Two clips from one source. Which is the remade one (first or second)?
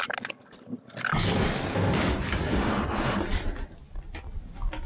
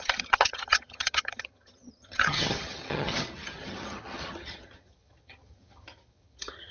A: second